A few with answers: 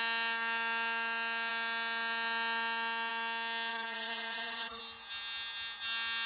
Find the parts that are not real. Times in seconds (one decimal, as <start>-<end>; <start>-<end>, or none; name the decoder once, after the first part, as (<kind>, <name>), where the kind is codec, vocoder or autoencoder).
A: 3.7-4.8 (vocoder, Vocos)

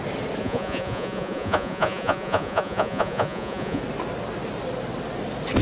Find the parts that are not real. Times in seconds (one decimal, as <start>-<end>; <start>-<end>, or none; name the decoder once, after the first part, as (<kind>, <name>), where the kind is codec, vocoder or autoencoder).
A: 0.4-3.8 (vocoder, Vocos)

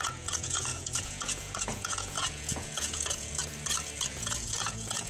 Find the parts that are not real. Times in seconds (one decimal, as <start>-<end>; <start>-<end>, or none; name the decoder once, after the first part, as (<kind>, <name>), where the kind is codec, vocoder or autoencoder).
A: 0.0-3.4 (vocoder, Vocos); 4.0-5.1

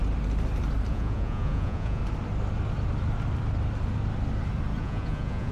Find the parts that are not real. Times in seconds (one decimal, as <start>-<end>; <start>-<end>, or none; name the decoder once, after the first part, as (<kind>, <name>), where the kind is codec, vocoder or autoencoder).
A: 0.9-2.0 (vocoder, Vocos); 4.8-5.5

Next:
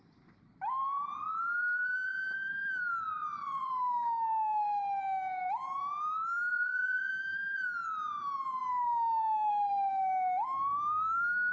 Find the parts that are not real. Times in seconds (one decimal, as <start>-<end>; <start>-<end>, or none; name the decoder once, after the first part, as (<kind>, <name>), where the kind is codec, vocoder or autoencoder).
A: 3.2-3.7 (vocoder, Vocos); 6.5-7.1

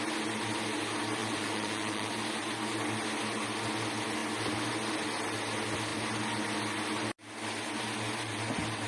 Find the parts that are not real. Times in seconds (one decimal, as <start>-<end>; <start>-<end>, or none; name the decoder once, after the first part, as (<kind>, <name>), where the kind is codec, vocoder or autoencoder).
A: 1.2-2.1 (vocoder, Vocos)